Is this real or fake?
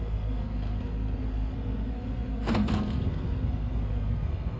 fake